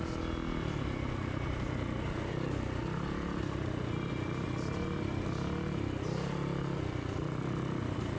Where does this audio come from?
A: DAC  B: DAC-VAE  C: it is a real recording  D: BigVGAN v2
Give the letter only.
C